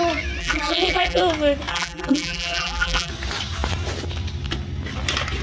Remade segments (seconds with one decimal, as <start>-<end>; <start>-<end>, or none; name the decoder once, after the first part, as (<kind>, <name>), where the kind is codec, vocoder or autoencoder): 0.4-1.2 (vocoder, BigVGAN v2); 1.7-3.1